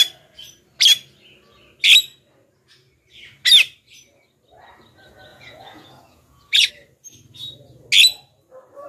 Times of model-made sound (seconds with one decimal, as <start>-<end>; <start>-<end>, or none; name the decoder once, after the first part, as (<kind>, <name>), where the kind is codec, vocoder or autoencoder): 5.3-6.7 (vocoder, Vocos)